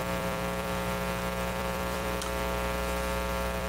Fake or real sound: fake